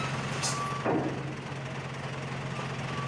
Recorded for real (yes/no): yes